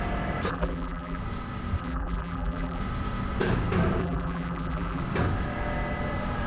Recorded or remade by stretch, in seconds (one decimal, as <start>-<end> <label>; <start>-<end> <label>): 0.0-0.5 recorded; 0.5-1.2 remade; 1.2-1.8 recorded; 1.8-2.8 remade; 2.8-4.0 recorded; 4.0-5.0 remade; 5.0-6.5 recorded